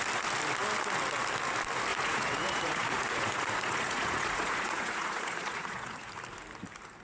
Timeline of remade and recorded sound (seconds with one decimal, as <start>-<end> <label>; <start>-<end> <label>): 0.0-1.9 recorded; 1.9-6.1 remade; 6.1-7.0 recorded